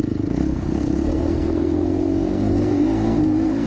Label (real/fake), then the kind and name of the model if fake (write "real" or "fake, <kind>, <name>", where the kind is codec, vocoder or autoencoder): fake, codec, SNAC